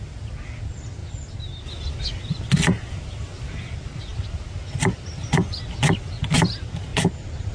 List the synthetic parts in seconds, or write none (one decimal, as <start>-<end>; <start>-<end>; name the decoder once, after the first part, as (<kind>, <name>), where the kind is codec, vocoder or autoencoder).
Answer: none